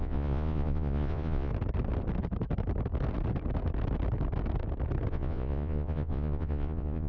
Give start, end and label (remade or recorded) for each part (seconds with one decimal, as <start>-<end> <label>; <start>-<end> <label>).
0.0-1.5 remade; 1.5-5.1 recorded; 5.1-7.1 remade